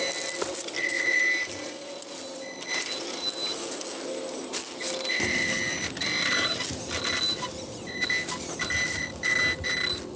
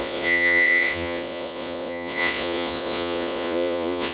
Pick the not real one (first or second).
second